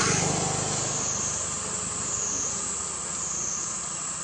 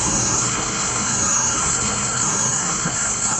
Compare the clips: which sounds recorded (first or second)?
first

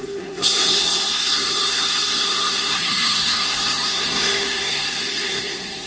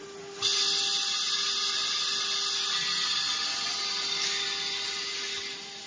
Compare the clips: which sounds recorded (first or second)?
second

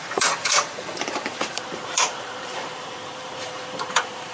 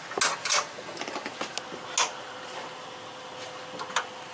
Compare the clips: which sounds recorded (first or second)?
second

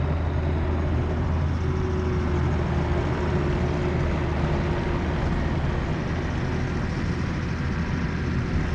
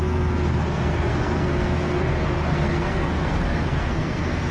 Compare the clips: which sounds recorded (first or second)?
first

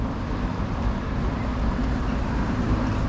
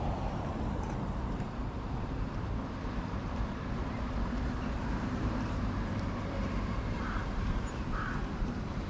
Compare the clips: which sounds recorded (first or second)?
first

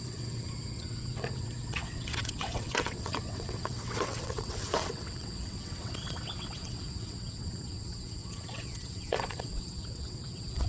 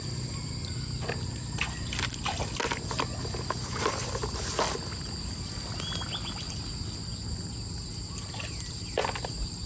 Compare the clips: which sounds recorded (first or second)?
second